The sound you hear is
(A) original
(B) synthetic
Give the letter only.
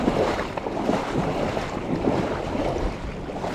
B